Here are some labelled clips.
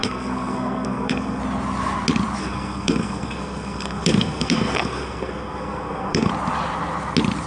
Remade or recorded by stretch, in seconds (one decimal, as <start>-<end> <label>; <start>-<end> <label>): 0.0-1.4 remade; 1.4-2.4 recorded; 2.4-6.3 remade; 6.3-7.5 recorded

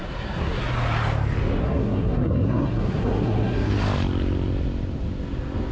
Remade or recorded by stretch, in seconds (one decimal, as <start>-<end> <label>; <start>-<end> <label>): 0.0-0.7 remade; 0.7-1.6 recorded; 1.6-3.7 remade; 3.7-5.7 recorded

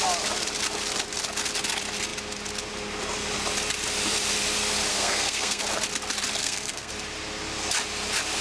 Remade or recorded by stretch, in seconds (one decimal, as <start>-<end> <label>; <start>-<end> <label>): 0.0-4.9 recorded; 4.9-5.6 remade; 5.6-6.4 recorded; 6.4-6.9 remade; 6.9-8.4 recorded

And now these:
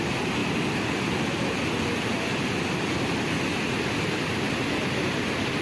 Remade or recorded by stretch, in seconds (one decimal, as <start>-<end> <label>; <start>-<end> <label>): 0.0-5.6 recorded

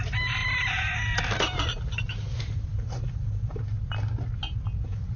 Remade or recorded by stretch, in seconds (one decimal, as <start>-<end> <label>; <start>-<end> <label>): 0.0-5.2 recorded